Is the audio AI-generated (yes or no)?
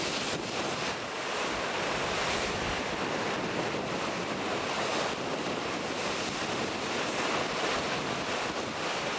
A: no